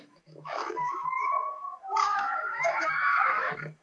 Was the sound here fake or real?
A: fake